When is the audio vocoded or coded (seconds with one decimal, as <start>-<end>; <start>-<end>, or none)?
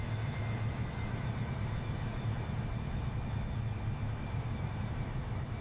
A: 4.1-4.8